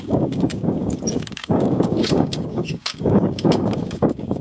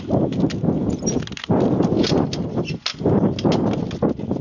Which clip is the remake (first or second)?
first